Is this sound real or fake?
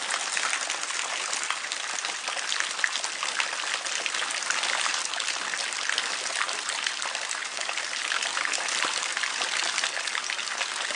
real